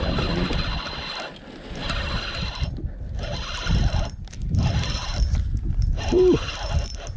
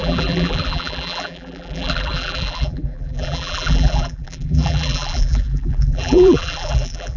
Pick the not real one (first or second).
second